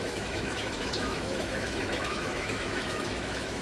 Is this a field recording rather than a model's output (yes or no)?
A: no